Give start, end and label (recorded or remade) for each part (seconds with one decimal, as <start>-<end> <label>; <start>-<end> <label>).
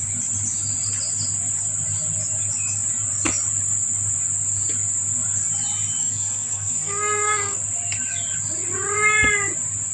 0.0-6.0 recorded; 6.0-7.6 remade; 7.6-9.9 recorded